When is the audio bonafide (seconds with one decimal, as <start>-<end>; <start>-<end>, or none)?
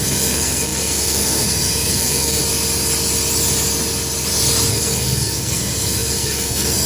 2.4-4.7